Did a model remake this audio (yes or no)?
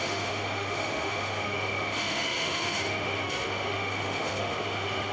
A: yes